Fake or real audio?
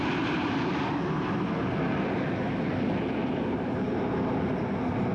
real